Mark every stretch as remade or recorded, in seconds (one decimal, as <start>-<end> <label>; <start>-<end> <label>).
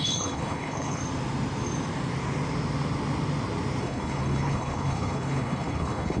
0.0-1.0 remade; 1.0-3.8 recorded; 3.8-6.2 remade